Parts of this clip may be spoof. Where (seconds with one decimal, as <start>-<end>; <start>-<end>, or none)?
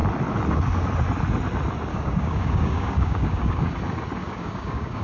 1.9-3.7; 4.2-5.0